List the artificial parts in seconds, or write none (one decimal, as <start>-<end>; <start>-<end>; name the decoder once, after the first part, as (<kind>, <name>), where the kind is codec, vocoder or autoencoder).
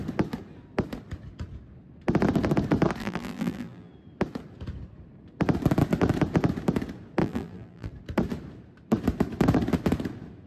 3.0-3.9 (vocoder, BigVGAN v2); 7.2-7.9